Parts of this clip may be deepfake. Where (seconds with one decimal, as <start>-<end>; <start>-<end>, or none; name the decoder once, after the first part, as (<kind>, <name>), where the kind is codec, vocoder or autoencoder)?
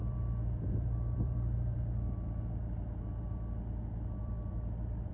0.0-2.1 (vocoder, BigVGAN v2); 4.2-5.1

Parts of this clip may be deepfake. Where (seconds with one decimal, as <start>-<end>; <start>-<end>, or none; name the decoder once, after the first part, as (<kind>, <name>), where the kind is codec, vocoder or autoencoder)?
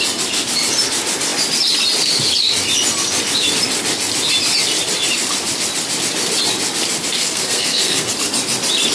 7.2-8.1 (codec, SNAC)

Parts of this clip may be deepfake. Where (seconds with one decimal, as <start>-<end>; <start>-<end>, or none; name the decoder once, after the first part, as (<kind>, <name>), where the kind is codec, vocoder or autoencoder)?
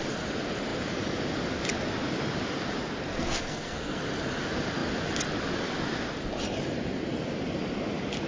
3.1-4.0 (codec, SNAC)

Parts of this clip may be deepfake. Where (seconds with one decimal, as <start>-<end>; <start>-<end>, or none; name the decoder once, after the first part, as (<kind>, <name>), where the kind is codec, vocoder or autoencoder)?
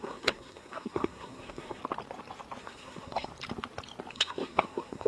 0.0-1.8 (codec, SNAC); 2.6-3.3; 4.1-5.1